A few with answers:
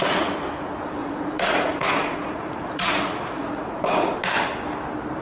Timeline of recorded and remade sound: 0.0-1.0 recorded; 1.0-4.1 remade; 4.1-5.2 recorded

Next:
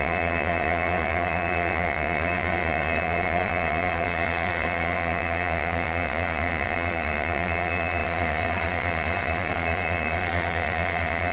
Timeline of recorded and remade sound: 0.0-11.3 remade

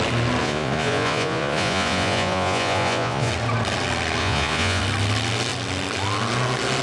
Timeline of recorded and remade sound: 0.0-0.4 recorded; 0.4-3.3 remade; 3.3-4.2 recorded; 4.2-4.8 remade; 4.8-6.8 recorded

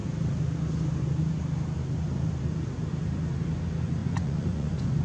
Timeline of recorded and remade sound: 0.0-4.0 recorded; 4.0-5.0 remade

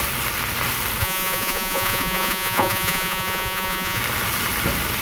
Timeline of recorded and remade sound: 0.0-1.0 recorded; 1.0-4.0 remade; 4.0-5.0 recorded

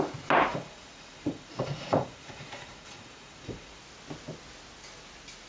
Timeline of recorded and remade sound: 0.0-0.5 recorded; 0.5-3.8 remade; 3.8-5.5 recorded

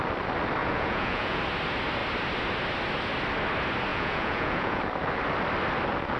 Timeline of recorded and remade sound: 0.0-0.6 recorded; 0.6-1.4 remade; 1.4-3.9 recorded; 3.9-4.8 remade; 4.8-6.2 recorded

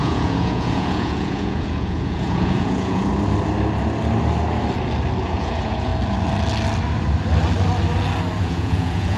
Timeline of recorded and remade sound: 0.0-3.1 remade; 3.1-5.2 recorded; 5.2-5.9 remade; 5.9-8.4 recorded; 8.4-9.2 remade